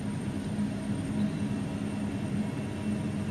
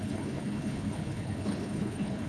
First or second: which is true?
first